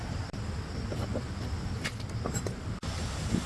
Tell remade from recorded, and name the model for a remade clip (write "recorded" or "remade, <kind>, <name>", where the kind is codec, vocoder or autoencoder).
recorded